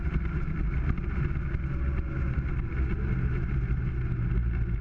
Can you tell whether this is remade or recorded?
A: recorded